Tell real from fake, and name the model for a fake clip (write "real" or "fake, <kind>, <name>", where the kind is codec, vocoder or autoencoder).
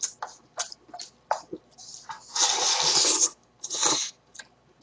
real